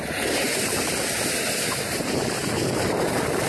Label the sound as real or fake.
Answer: real